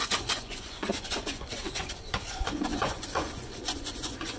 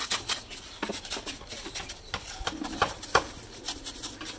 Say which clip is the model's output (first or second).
first